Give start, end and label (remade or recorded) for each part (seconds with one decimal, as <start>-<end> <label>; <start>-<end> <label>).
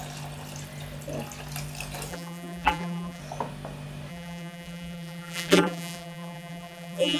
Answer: 0.0-2.1 recorded; 2.1-3.2 remade; 3.2-4.1 recorded; 4.1-7.2 remade